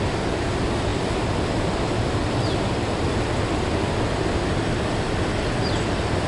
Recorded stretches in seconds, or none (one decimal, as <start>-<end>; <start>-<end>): 0.0-6.3